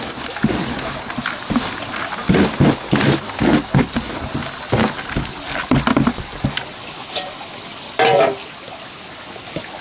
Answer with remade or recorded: recorded